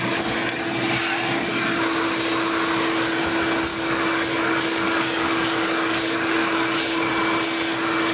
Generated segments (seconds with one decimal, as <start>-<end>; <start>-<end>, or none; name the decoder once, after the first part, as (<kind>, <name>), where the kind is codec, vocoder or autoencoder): 3.7-7.1 (codec, DAC)